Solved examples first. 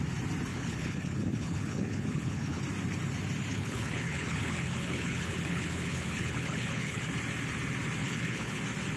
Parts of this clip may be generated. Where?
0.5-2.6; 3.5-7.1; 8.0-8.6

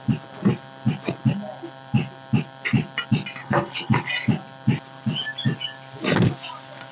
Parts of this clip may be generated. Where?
3.4-4.1

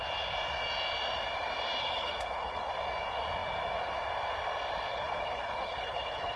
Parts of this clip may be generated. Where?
1.8-2.7; 4.9-6.4